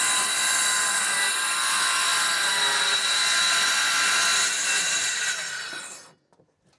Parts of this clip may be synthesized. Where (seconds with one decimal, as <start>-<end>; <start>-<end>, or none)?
none